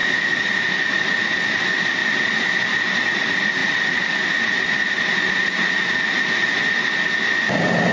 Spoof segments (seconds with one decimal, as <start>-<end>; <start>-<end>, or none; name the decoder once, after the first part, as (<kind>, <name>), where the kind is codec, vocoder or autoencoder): 2.0-2.8 (vocoder, BigVGAN v2)